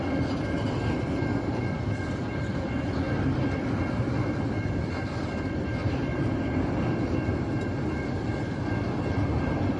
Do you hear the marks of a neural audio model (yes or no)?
yes